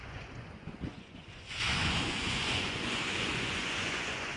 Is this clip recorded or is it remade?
remade